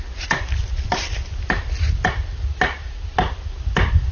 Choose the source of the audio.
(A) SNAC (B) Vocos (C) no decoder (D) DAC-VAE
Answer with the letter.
C